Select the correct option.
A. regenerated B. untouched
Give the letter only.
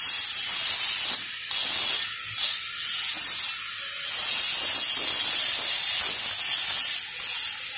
B